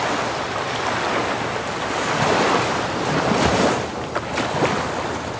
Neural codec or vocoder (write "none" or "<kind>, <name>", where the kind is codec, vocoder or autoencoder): none